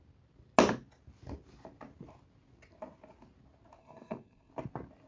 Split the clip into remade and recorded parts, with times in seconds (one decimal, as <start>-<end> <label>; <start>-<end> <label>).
0.0-3.8 recorded; 3.8-4.5 remade; 4.5-5.1 recorded